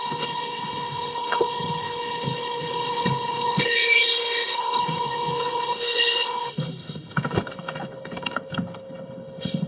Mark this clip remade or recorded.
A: remade